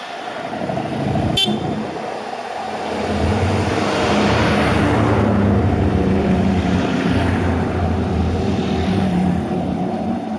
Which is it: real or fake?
fake